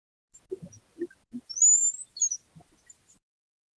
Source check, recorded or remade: recorded